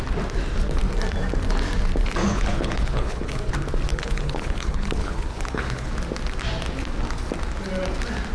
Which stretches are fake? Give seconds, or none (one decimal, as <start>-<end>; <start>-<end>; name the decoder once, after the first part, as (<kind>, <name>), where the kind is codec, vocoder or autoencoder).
2.2-3.5 (codec, HILCodec); 3.9-5.9